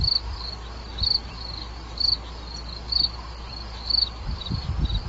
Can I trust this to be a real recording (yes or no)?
yes